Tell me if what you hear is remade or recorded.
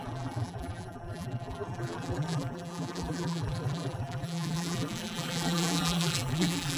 remade